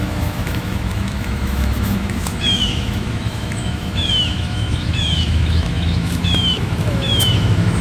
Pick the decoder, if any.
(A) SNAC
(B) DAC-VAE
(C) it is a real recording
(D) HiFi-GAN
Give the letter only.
B